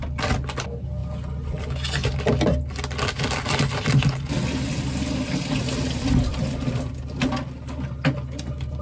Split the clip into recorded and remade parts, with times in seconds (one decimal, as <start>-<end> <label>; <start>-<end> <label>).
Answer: 0.0-6.3 recorded; 6.3-6.9 remade; 6.9-8.8 recorded